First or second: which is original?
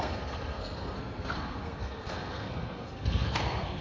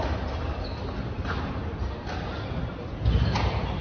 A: second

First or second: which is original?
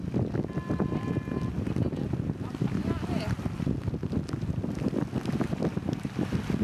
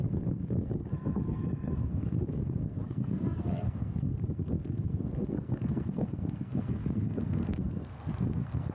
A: first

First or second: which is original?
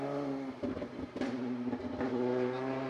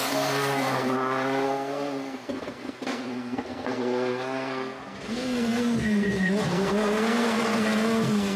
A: first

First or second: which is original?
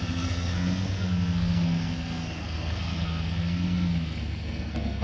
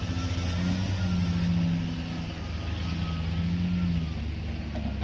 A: second